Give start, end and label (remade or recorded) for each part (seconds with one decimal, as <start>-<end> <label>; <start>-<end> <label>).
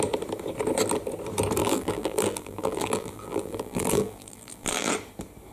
0.0-1.6 recorded; 1.6-4.9 remade; 4.9-5.5 recorded